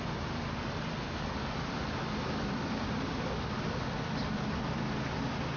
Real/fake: real